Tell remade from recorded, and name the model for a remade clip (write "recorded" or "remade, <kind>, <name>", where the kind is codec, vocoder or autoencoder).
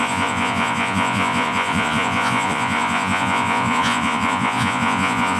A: remade, vocoder, Vocos